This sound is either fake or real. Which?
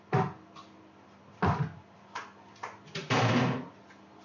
real